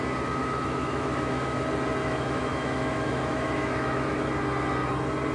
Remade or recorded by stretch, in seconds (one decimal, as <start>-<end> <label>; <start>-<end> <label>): 0.0-0.4 recorded; 0.4-1.6 remade; 1.6-2.0 recorded; 2.0-4.3 remade; 4.3-5.3 recorded